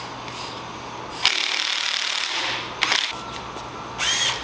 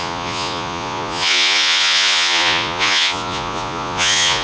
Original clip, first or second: first